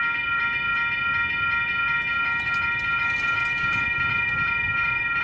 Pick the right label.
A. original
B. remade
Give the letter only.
A